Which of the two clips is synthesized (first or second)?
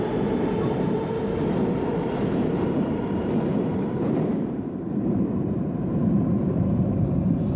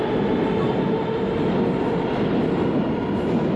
first